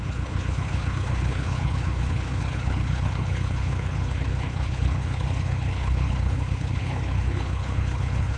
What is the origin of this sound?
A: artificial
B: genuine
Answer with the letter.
A